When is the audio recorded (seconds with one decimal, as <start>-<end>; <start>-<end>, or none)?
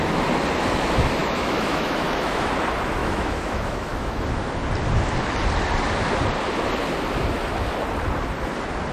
0.0-1.2; 2.5-3.0; 4.2-8.9